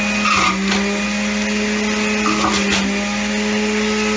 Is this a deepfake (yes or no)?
no